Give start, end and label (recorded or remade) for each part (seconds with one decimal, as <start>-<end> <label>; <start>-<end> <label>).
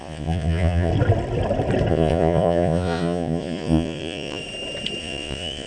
0.0-0.9 remade; 0.9-1.9 recorded; 1.9-4.4 remade; 4.4-5.0 recorded; 5.0-5.7 remade